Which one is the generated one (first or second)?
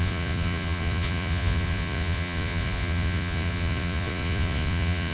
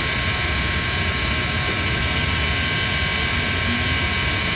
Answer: first